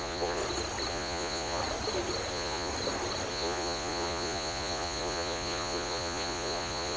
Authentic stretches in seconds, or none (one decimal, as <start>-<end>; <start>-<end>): 0.4-0.9; 1.6-2.3; 2.7-3.3